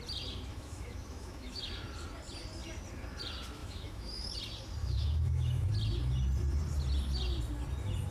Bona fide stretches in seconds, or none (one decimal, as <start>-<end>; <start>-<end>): 0.0-0.5; 1.7-3.6; 4.3-4.8; 5.7-8.1